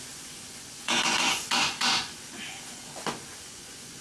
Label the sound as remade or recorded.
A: remade